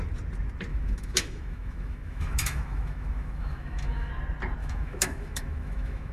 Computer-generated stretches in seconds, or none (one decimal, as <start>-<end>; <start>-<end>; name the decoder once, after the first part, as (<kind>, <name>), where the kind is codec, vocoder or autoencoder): 0.7-4.1 (autoencoder, DAC-VAE); 4.6-6.1